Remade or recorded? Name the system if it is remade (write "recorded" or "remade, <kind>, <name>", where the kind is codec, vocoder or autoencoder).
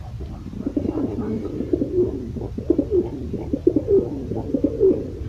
recorded